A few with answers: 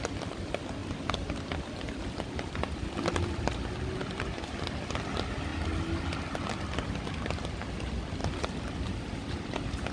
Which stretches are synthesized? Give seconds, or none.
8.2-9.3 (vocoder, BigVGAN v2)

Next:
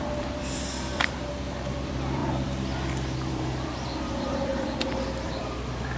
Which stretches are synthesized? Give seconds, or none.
0.0-6.0 (vocoder, BigVGAN v2)

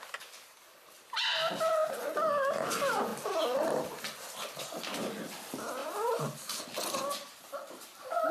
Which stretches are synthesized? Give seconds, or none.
5.8-6.6 (vocoder, BigVGAN v2)

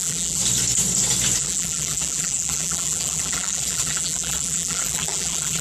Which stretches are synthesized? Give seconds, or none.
0.0-0.4 (vocoder, BigVGAN v2); 1.4-5.6

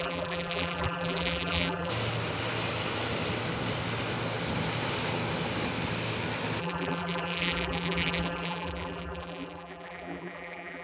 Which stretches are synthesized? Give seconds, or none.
0.0-1.9 (vocoder, BigVGAN v2); 6.6-10.8

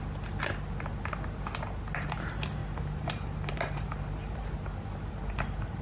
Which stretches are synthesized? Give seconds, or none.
2.6-4.5 (vocoder, BigVGAN v2)

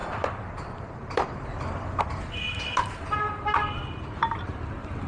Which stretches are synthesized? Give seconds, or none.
0.0-2.0 (vocoder, BigVGAN v2)

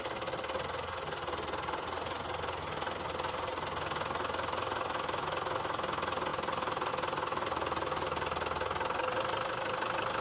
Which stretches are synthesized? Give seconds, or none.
6.3-6.9 (vocoder, BigVGAN v2)